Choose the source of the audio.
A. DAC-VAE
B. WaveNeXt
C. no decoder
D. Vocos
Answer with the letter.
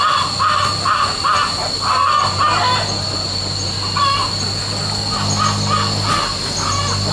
C